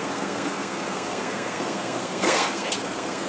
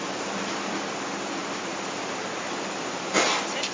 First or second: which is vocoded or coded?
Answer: first